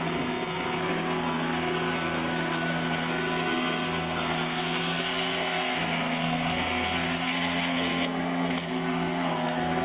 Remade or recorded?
remade